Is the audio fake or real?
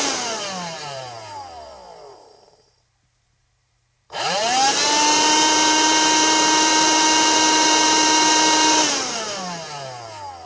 fake